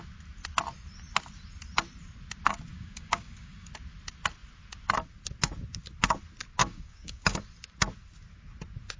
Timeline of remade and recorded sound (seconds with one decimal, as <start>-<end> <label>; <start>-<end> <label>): 0.0-2.7 recorded; 2.7-3.7 remade; 3.7-6.6 recorded; 6.6-7.4 remade; 7.4-9.0 recorded